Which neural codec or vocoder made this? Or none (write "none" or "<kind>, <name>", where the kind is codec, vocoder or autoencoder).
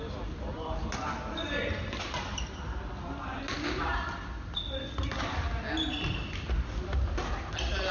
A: none